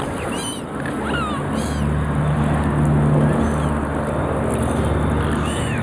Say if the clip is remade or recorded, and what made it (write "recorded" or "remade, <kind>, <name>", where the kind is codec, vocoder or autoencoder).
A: recorded